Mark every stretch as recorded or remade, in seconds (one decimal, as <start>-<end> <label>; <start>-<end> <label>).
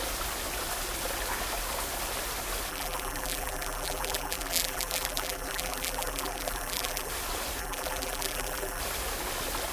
0.0-2.7 recorded; 2.7-7.1 remade; 7.1-7.6 recorded; 7.6-8.8 remade; 8.8-9.7 recorded